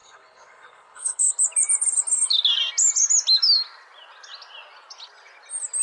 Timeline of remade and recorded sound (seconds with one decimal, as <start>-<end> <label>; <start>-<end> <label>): 0.0-1.3 remade; 1.3-5.8 recorded